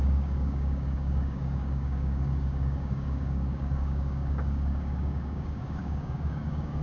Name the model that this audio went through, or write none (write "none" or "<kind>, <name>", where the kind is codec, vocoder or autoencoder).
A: codec, DAC